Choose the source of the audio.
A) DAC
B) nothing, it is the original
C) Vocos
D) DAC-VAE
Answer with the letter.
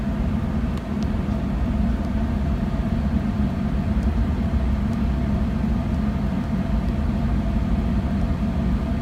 B